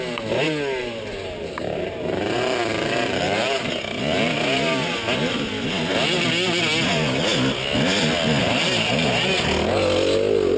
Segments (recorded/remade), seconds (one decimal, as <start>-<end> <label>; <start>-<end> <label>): 0.0-0.8 recorded; 0.8-3.7 remade; 3.7-8.4 recorded; 8.4-8.9 remade; 8.9-10.6 recorded